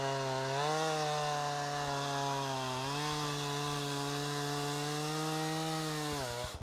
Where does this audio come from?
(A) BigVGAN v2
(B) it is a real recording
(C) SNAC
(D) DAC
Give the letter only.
B